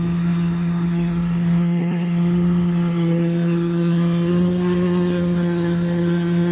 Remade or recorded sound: remade